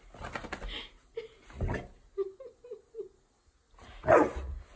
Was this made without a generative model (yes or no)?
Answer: yes